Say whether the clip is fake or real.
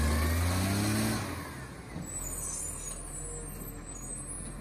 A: real